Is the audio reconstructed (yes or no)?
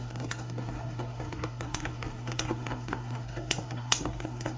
yes